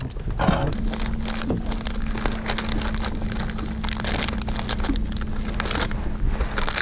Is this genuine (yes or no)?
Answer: yes